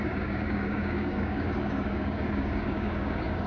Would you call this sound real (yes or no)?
no